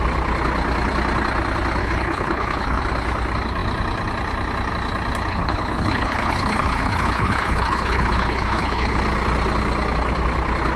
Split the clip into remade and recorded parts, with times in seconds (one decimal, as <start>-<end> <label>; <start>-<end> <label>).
0.0-1.8 recorded; 1.8-2.8 remade; 2.8-5.3 recorded; 5.3-9.0 remade; 9.0-10.8 recorded